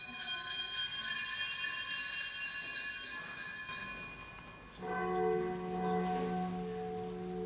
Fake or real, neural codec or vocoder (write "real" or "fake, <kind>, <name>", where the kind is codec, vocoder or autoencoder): real